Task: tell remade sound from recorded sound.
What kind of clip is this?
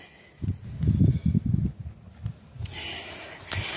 recorded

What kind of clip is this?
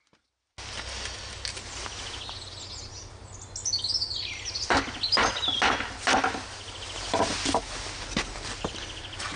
recorded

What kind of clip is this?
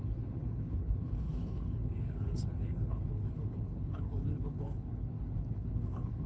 remade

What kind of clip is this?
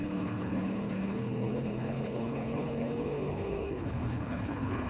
remade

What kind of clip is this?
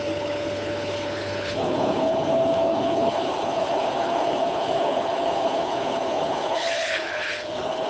remade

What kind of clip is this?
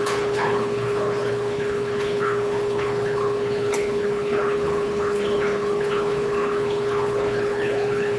remade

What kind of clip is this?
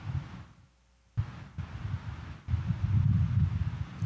recorded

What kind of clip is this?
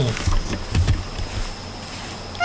recorded